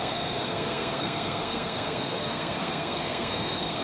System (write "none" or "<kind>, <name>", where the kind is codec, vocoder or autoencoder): codec, SNAC